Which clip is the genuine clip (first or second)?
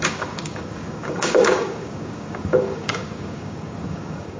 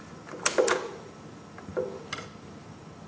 second